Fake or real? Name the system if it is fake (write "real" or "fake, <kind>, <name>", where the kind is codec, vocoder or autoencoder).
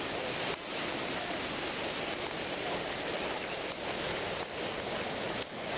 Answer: real